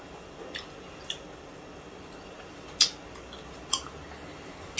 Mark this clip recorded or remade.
recorded